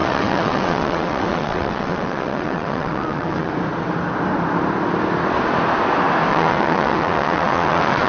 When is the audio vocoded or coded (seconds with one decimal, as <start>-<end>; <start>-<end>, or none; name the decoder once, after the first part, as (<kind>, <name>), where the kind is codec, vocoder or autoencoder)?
0.0-3.5 (vocoder, WaveNeXt); 6.3-8.1